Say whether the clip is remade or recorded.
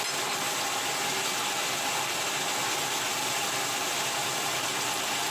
recorded